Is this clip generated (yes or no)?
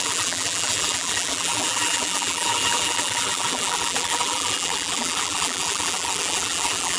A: yes